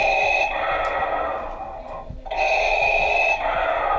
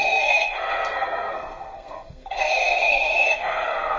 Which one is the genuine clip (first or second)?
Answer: first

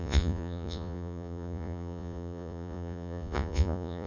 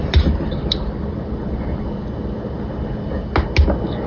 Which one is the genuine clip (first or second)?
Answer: second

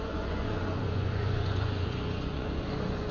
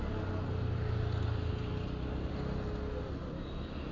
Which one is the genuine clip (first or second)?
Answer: second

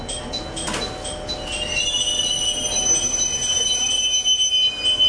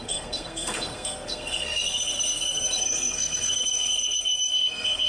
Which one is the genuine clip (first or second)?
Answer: first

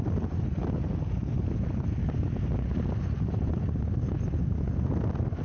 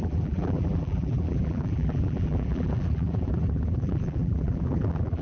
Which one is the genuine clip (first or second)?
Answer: first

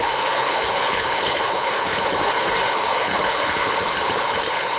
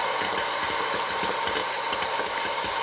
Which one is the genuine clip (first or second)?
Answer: second